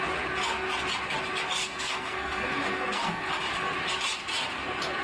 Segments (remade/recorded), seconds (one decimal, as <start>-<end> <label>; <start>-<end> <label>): 0.0-1.6 recorded; 1.6-3.3 remade; 3.3-5.0 recorded